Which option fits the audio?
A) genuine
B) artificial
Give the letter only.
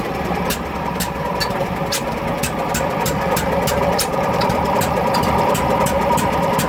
B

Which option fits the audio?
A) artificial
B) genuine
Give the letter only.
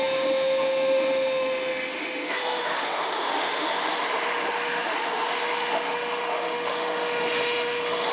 A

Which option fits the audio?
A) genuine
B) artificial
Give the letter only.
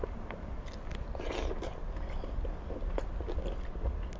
A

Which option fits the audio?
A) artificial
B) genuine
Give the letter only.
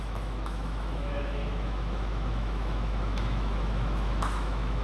A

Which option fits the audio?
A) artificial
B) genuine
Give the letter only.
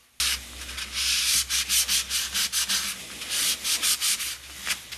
B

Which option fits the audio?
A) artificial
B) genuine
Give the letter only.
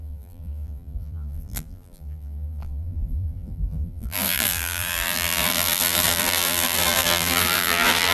A